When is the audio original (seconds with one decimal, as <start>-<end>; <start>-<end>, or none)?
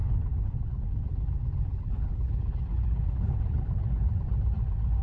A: 0.9-1.7; 4.2-5.0